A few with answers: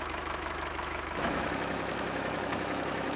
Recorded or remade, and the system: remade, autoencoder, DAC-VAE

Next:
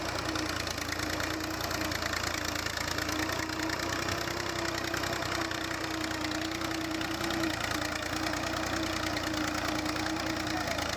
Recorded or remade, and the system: recorded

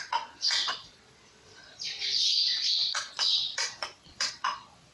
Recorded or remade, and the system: remade, vocoder, Vocos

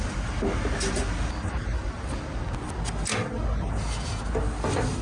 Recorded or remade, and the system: recorded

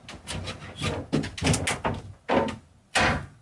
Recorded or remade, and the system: recorded